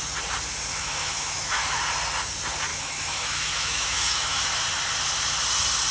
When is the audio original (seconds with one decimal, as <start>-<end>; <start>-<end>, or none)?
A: 0.0-0.7; 1.8-2.7; 4.4-5.9